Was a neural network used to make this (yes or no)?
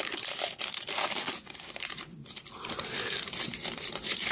no